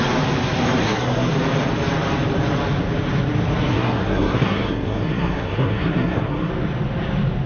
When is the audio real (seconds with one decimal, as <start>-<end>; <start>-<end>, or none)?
0.0-0.8; 1.3-3.7; 6.5-7.5

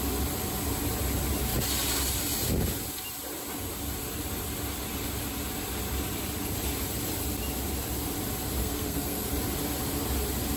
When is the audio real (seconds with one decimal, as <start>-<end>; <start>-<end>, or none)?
0.0-8.6; 9.3-10.6

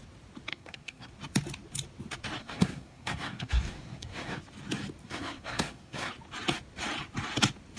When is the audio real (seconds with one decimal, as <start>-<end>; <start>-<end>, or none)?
0.0-0.5; 1.1-2.4; 4.4-5.0; 6.1-7.8

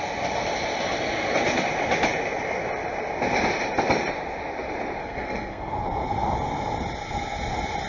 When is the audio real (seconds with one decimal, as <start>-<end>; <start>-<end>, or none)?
0.0-5.0; 5.7-7.9

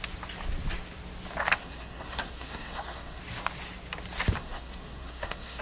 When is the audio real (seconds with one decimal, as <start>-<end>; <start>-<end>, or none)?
0.0-1.6; 3.2-4.4

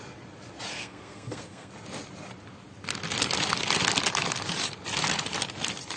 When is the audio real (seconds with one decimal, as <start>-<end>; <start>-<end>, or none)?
0.0-0.7; 1.7-6.0